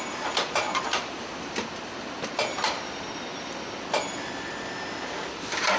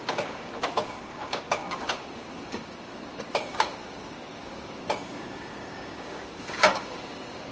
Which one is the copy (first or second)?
second